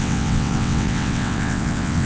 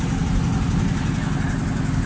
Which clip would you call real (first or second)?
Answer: second